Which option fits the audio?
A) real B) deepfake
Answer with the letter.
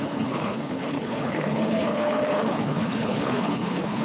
B